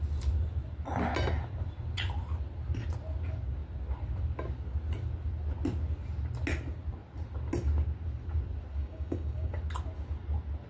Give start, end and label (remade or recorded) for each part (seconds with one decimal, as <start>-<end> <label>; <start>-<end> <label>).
0.0-8.8 recorded; 8.8-9.5 remade; 9.5-10.7 recorded